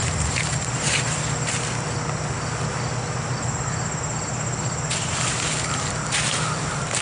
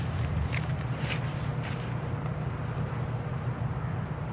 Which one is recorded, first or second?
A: first